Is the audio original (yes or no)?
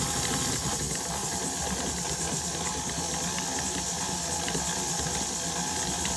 yes